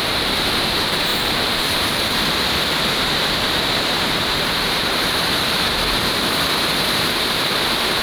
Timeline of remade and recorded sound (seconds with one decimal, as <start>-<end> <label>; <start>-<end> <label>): 0.0-8.0 remade